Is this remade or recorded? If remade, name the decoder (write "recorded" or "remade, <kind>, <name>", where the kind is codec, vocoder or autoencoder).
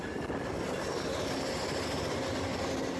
recorded